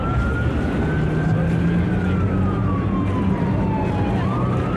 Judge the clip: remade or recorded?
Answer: recorded